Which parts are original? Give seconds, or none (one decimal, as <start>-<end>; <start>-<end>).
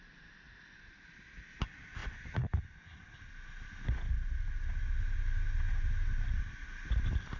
0.0-7.4